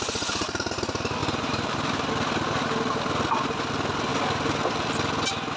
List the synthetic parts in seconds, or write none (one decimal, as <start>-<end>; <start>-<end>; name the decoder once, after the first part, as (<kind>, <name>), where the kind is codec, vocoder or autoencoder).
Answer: 1.2-2.1 (vocoder, BigVGAN v2)